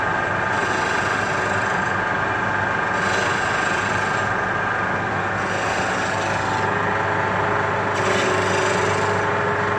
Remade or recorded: recorded